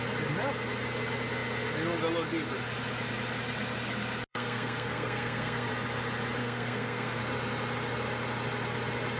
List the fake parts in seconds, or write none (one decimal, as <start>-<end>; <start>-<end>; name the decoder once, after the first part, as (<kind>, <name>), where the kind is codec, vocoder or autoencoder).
4.3-5.7 (codec, SNAC); 6.4-7.2